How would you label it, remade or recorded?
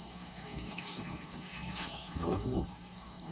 remade